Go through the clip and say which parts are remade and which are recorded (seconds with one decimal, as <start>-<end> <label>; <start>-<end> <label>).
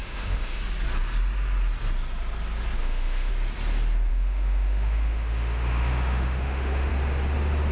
0.0-0.6 remade; 0.6-2.8 recorded; 2.8-3.3 remade; 3.3-4.1 recorded; 4.1-6.9 remade; 6.9-7.7 recorded